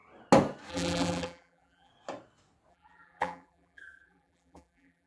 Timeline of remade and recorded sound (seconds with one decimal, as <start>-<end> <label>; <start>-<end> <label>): 0.0-0.7 recorded; 0.7-1.9 remade; 1.9-2.7 recorded; 2.7-5.1 remade

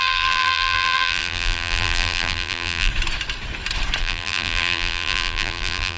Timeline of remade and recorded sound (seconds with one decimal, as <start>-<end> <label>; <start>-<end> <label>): 0.0-2.9 remade; 2.9-4.0 recorded; 4.0-6.0 remade

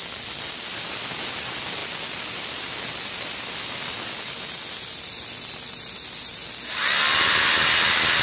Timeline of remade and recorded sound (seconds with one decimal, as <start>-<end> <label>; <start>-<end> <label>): 0.0-8.2 recorded

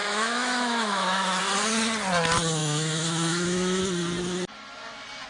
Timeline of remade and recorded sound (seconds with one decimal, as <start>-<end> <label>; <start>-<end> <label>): 0.0-1.4 remade; 1.4-2.6 recorded; 2.6-3.8 remade; 3.8-5.3 recorded

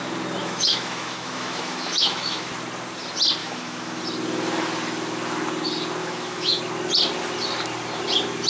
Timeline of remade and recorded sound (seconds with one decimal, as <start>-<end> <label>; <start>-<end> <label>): 0.0-0.4 recorded; 0.4-2.5 remade; 2.5-3.4 recorded; 3.4-4.0 remade; 4.0-6.0 recorded; 6.0-6.6 remade; 6.6-8.5 recorded

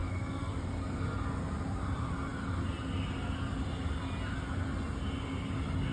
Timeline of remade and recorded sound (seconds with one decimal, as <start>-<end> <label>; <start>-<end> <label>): 0.0-0.5 remade; 0.5-5.9 recorded

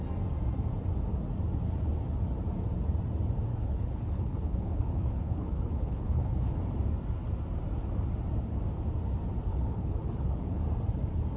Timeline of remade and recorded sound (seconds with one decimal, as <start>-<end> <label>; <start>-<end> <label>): 0.0-3.5 recorded; 3.5-6.6 remade; 6.6-9.5 recorded; 9.5-10.6 remade; 10.6-11.4 recorded

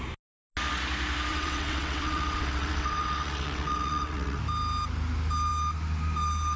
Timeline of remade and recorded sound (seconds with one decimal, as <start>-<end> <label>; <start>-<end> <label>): 0.0-1.3 recorded; 1.3-4.4 remade; 4.4-6.6 recorded